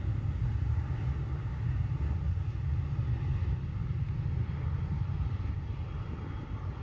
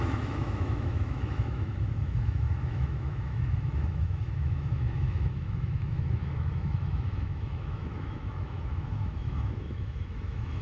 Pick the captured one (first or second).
first